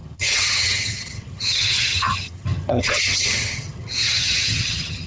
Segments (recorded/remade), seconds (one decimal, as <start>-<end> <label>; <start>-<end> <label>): 0.0-5.1 remade